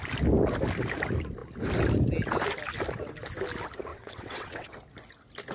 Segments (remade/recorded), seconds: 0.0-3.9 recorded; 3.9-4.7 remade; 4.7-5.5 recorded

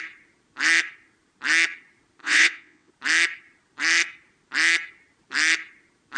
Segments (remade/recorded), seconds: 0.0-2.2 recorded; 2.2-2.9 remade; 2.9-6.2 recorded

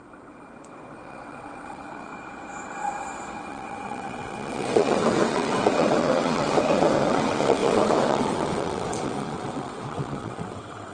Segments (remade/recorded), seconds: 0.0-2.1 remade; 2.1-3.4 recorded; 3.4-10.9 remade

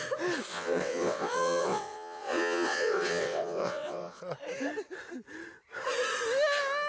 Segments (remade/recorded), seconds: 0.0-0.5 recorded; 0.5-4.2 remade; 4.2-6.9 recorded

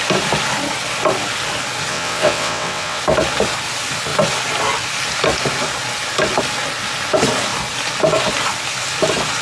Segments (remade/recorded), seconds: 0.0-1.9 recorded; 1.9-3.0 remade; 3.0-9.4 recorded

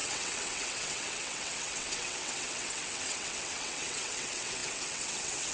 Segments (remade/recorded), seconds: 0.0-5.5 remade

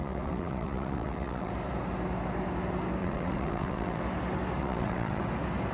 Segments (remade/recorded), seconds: 0.0-1.5 remade; 1.5-3.0 recorded; 3.0-4.0 remade; 4.0-4.6 recorded; 4.6-5.2 remade; 5.2-5.7 recorded